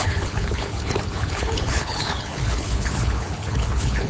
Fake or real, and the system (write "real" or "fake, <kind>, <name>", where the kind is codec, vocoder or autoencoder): fake, codec, HILCodec